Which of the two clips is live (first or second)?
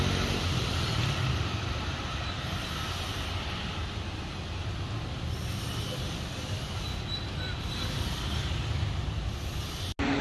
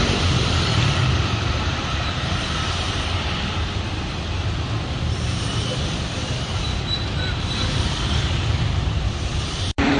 first